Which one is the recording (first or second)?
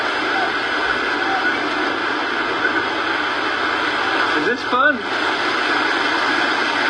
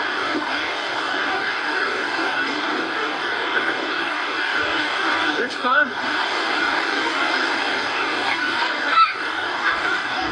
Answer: first